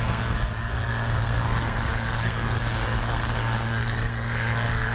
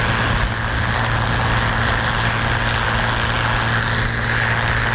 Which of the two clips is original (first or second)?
second